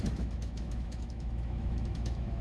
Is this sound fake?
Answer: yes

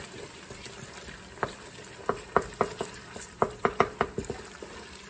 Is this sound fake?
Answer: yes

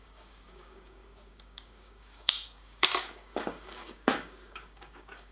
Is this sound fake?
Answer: yes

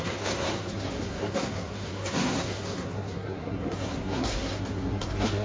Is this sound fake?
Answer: yes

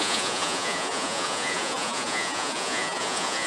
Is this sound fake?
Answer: yes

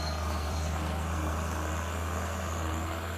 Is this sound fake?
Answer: yes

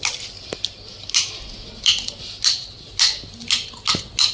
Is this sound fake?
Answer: no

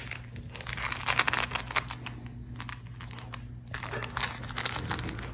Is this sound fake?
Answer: no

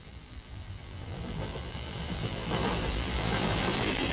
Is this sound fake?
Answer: yes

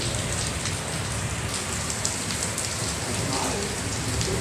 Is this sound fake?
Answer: no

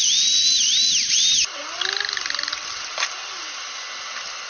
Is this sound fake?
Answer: no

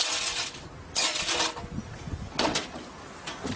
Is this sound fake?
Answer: no